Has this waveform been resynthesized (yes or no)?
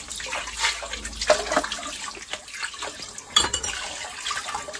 no